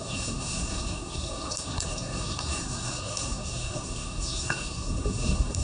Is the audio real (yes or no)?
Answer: no